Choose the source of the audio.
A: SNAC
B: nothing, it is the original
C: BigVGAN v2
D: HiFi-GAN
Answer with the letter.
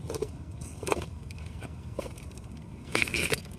A